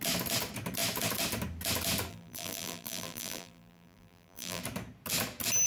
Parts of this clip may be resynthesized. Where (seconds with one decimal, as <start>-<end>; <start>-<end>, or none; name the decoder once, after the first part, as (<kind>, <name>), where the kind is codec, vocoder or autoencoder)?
2.1-4.6 (vocoder, BigVGAN v2)